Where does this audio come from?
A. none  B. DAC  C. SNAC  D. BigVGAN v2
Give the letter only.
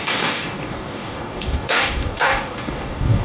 B